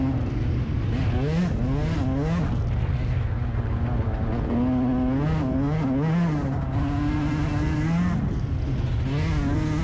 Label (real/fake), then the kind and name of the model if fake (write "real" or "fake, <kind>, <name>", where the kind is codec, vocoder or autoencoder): real